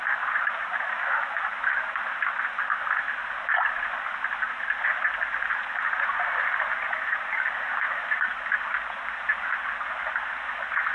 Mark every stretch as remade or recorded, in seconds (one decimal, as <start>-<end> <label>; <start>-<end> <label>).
0.0-10.9 recorded